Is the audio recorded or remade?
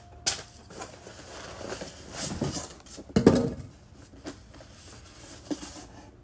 recorded